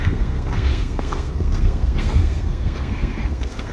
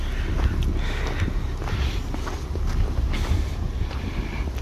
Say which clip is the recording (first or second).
second